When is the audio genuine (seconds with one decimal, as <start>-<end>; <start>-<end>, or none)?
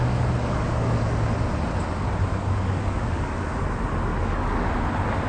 1.0-2.3; 3.6-4.1; 4.7-5.3